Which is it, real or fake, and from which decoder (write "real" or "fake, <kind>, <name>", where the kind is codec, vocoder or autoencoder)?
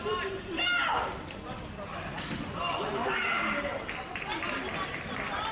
real